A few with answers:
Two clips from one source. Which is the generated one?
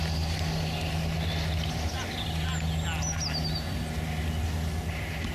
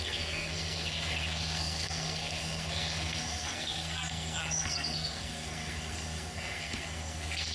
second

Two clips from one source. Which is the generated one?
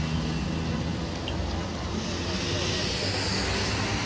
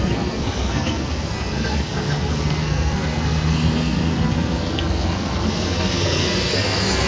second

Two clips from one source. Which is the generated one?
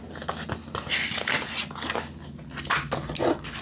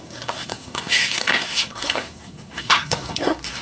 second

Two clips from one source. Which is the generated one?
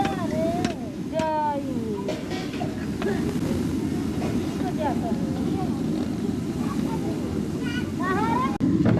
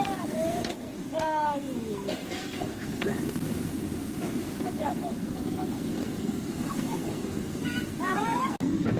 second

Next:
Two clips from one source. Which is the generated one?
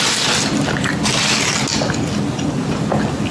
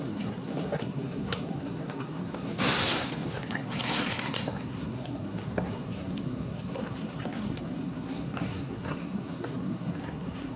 second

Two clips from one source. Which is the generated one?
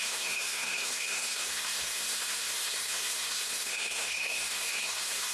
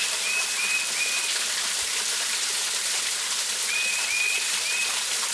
first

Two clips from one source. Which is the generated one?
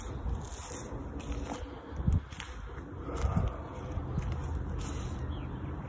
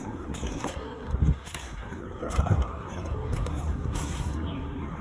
second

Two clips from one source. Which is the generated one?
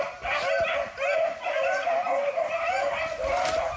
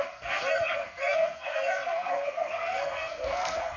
second